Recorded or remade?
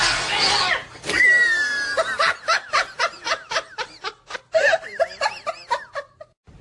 recorded